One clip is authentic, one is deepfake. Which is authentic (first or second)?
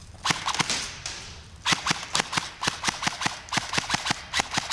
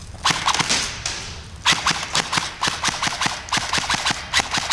second